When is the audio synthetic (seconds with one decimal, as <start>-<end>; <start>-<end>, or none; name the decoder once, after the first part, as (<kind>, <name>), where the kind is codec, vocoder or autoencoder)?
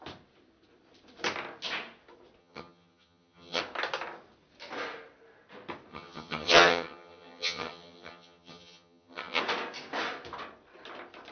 2.4-3.6 (vocoder, HiFi-GAN); 5.9-9.4